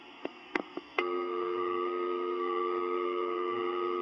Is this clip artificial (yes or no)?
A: yes